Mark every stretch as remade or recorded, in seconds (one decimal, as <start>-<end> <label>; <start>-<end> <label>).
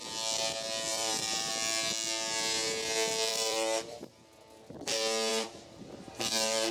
0.0-0.9 recorded; 0.9-1.5 remade; 1.5-3.3 recorded; 3.3-4.1 remade; 4.1-5.3 recorded; 5.3-6.7 remade